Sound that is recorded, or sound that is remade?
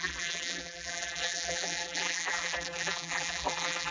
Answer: remade